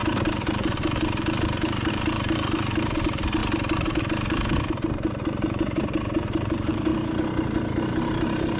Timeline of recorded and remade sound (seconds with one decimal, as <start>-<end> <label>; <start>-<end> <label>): 0.0-6.9 remade; 6.9-7.9 recorded; 7.9-8.6 remade